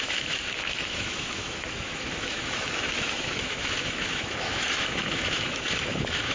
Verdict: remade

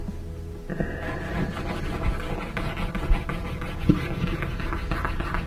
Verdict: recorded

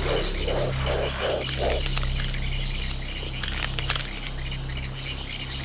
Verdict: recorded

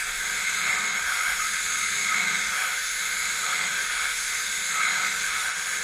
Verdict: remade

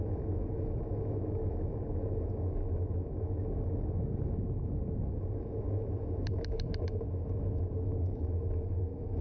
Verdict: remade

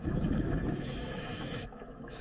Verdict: remade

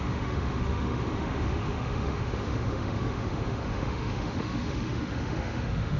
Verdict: remade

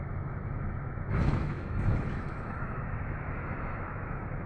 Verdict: remade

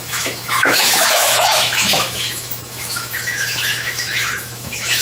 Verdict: remade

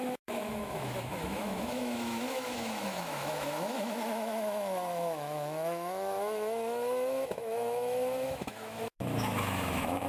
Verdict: remade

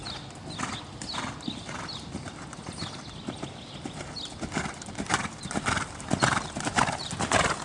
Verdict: recorded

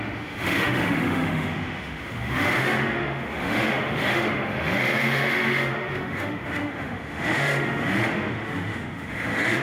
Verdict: remade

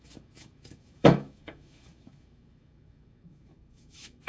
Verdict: remade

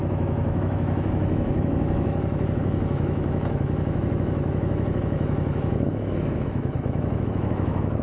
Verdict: remade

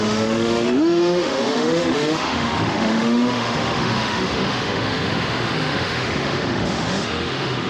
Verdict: remade